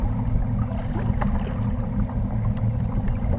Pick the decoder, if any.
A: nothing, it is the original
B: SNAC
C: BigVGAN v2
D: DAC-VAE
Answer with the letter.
A